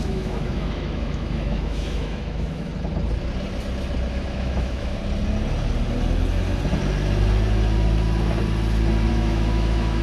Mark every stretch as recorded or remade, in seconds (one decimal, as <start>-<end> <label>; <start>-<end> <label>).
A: 0.0-2.7 remade; 2.7-4.1 recorded; 4.1-5.0 remade; 5.0-9.1 recorded; 9.1-10.0 remade